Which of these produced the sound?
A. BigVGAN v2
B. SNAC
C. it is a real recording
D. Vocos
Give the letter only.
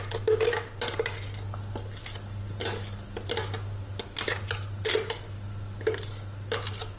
C